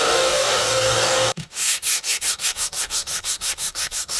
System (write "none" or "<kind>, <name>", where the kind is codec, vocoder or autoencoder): codec, DAC